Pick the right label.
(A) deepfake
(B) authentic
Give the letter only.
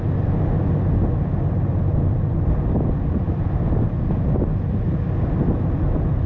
B